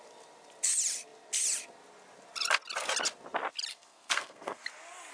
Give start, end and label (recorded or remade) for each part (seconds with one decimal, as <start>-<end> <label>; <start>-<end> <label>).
0.0-3.7 recorded; 3.7-4.6 remade; 4.6-5.1 recorded